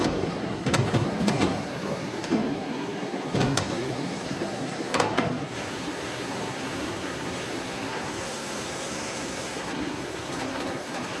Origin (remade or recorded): remade